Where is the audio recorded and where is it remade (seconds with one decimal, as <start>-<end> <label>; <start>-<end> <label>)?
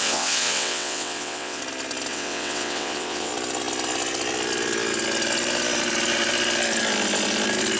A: 0.0-1.6 remade; 1.6-2.1 recorded; 2.1-3.3 remade; 3.3-7.8 recorded